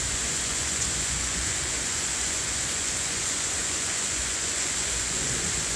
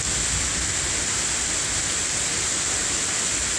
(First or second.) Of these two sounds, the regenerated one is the first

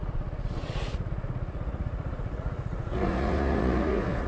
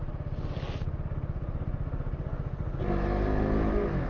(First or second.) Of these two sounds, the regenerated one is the first